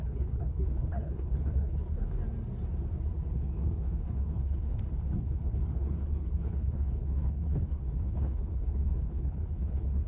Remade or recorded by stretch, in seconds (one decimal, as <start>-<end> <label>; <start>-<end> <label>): 0.0-2.2 remade; 2.2-3.3 recorded; 3.3-10.1 remade